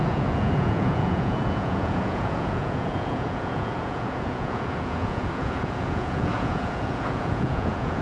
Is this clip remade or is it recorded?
remade